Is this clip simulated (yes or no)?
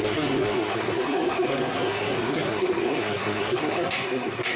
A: yes